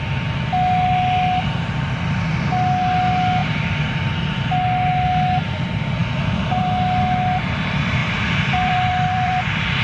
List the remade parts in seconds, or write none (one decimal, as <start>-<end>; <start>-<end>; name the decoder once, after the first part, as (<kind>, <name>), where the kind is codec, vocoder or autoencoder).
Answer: 8.0-9.8 (vocoder, BigVGAN v2)